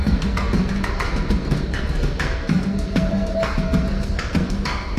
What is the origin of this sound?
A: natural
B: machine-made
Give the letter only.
B